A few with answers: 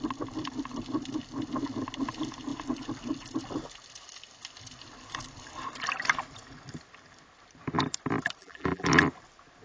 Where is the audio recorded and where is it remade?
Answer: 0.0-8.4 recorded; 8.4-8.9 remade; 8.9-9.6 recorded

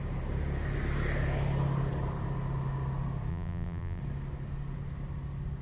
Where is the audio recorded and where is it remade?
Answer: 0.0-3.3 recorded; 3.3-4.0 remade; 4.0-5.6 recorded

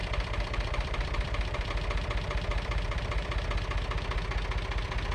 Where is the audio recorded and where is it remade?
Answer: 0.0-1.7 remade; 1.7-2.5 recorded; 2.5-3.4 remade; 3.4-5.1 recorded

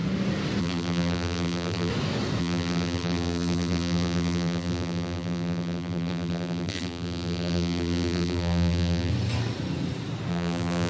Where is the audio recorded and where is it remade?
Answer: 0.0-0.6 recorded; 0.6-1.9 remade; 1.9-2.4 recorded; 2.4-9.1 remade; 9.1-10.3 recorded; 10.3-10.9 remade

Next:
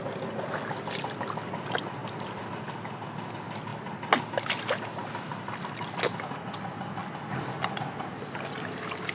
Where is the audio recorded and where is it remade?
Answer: 0.0-2.0 recorded; 2.0-2.5 remade; 2.5-9.1 recorded

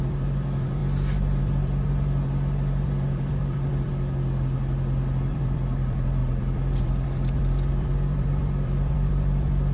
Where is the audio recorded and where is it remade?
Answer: 0.0-0.8 remade; 0.8-1.4 recorded; 1.4-3.9 remade; 3.9-5.3 recorded; 5.3-9.7 remade

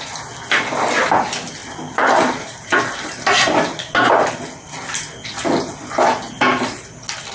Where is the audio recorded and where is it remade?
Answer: 0.0-1.6 recorded; 1.6-4.1 remade; 4.1-7.3 recorded

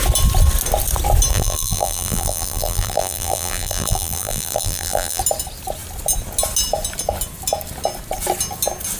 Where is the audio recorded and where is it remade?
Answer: 0.0-1.3 recorded; 1.3-5.2 remade; 5.2-9.0 recorded